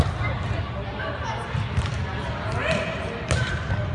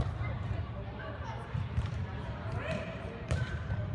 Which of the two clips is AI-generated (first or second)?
second